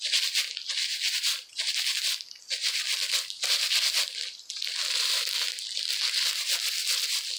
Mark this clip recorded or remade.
recorded